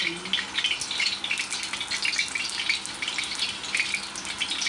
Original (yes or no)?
yes